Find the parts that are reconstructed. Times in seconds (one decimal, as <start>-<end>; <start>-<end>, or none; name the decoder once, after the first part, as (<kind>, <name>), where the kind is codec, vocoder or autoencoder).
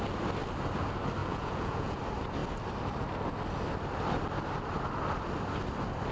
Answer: 1.2-2.0 (vocoder, Vocos)